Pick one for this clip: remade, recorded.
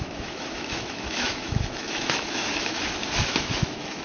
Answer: remade